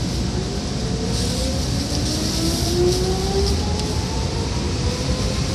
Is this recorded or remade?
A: recorded